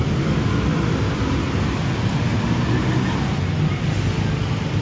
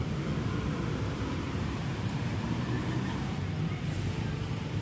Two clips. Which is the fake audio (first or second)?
second